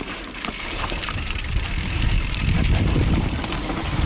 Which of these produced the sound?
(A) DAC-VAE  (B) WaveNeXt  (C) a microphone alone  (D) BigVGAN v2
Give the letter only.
D